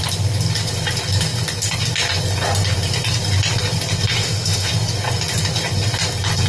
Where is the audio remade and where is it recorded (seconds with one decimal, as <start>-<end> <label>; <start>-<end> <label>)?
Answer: 0.0-4.1 recorded; 4.1-4.7 remade; 4.7-6.5 recorded